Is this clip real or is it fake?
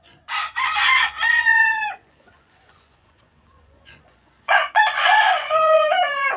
fake